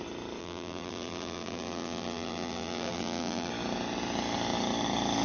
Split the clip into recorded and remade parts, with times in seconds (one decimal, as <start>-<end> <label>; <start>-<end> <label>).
0.0-0.4 recorded; 0.4-3.5 remade; 3.5-5.2 recorded